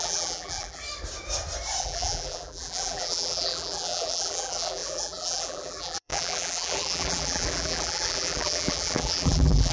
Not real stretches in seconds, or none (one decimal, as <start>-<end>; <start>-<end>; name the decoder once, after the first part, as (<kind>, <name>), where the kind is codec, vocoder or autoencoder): 0.0-0.8 (vocoder, BigVGAN v2); 1.8-9.7